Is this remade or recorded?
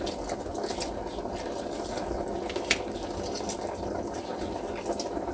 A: recorded